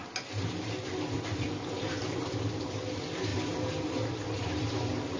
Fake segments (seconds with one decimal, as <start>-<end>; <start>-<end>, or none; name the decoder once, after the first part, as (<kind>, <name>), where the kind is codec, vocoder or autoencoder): 0.5-3.3 (vocoder, BigVGAN v2); 3.8-5.2